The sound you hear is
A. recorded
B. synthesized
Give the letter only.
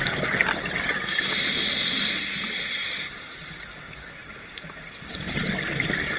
A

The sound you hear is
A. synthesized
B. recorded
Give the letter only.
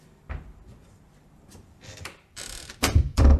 A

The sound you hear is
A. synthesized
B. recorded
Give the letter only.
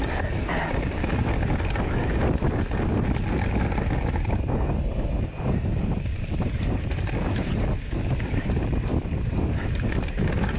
B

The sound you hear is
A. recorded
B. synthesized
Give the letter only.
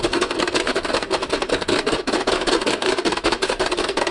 B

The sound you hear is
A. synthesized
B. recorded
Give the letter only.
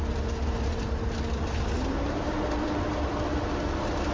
B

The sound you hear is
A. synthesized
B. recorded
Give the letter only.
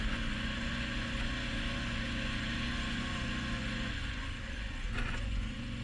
A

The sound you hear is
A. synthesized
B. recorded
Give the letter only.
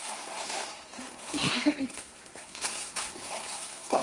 A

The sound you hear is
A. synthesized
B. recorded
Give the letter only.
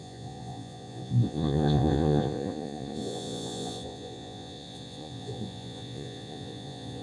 A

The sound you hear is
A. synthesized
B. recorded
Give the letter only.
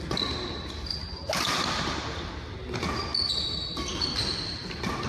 B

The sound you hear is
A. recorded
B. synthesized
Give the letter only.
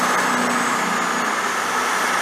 A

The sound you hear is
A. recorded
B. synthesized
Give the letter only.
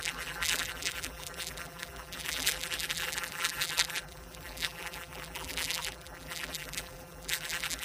B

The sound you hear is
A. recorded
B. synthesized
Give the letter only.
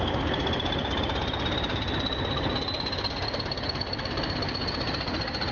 A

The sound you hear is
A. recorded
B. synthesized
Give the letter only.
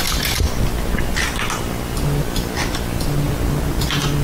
A